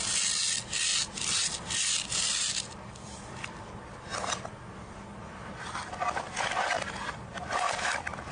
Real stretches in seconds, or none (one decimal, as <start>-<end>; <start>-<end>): 0.0-8.3